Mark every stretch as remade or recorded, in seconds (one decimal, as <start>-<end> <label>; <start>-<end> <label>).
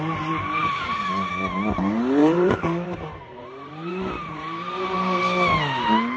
0.0-2.2 recorded; 2.2-5.2 remade; 5.2-6.2 recorded